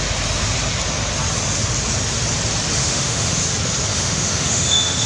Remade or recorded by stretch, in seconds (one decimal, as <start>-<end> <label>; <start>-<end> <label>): 0.0-2.8 recorded; 2.8-3.4 remade; 3.4-3.9 recorded; 3.9-5.1 remade